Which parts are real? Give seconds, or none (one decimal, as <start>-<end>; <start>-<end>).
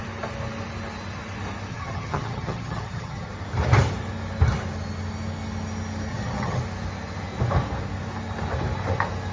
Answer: 0.0-1.7; 3.3-6.1; 6.6-9.3